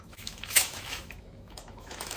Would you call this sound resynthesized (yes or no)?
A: yes